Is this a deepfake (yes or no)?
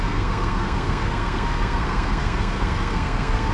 yes